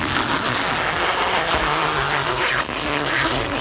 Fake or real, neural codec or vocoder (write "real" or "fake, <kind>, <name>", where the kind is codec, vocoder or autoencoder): real